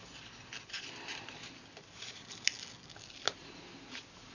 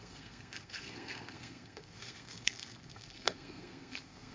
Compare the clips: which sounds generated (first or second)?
second